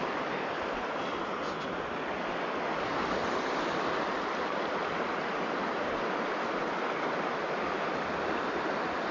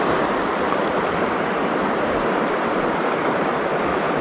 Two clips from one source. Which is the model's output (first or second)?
second